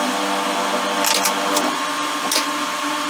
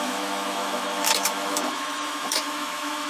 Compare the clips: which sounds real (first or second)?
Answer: first